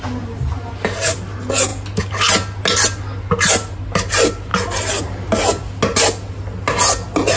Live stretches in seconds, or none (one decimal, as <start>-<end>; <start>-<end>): 0.0-7.4